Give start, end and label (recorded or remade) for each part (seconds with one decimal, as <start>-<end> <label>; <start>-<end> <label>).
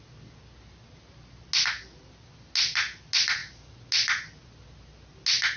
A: 0.0-5.6 recorded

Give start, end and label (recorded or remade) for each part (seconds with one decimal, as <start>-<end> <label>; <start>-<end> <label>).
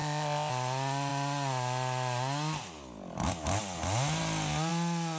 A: 0.0-0.5 remade; 0.5-5.2 recorded